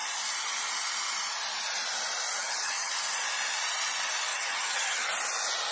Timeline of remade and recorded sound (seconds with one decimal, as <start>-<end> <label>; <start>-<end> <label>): 0.0-2.4 recorded; 2.4-2.9 remade; 2.9-4.3 recorded; 4.3-5.1 remade; 5.1-5.7 recorded